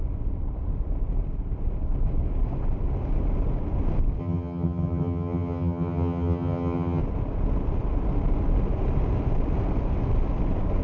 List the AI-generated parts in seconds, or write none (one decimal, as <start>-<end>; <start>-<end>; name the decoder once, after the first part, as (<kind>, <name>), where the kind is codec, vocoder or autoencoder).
4.2-7.0 (vocoder, HiFi-GAN)